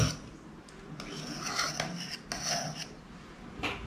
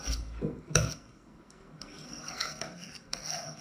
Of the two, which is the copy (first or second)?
second